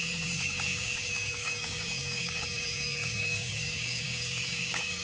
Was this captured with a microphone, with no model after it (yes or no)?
no